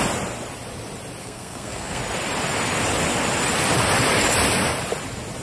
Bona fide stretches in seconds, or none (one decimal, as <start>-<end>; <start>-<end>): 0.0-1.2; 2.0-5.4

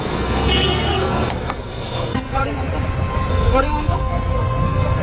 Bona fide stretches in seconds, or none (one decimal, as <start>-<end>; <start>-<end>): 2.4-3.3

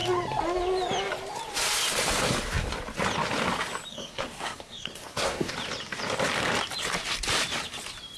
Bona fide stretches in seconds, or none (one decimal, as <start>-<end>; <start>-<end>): 0.0-3.9; 5.5-8.2

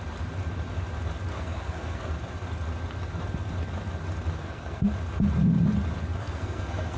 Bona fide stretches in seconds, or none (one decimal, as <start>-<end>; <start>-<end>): 0.0-1.3; 2.1-4.4; 4.9-6.2

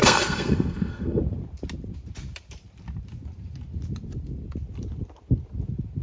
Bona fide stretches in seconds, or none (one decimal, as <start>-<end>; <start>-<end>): 1.2-6.0

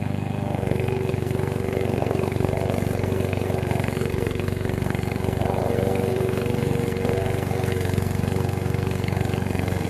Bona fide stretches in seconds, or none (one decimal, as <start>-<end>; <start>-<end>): none